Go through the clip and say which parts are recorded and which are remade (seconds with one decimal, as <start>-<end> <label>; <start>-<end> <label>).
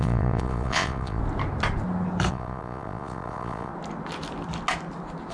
0.0-1.2 remade; 1.2-2.3 recorded; 2.3-3.7 remade; 3.7-5.3 recorded